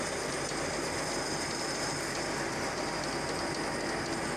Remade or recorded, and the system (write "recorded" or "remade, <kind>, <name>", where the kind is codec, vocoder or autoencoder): recorded